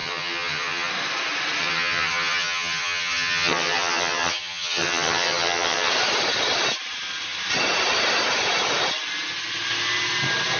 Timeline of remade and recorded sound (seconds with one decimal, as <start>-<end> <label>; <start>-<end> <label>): 0.0-0.9 remade; 0.9-1.6 recorded; 1.6-5.9 remade; 5.9-10.6 recorded